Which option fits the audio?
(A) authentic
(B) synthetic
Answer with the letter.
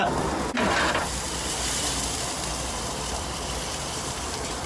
B